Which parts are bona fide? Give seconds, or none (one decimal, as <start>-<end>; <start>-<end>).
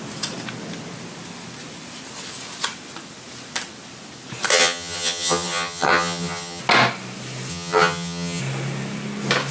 0.0-4.5; 6.6-7.5; 8.4-9.5